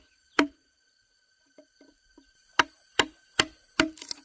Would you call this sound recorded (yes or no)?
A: no